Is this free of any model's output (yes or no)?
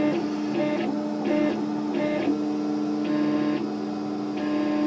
yes